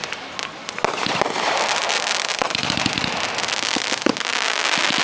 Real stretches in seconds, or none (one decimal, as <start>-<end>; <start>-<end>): 0.0-5.0